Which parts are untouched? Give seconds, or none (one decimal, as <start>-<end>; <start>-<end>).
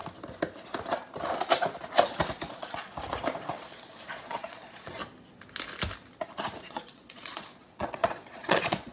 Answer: 0.0-2.5; 2.9-3.5; 5.0-6.6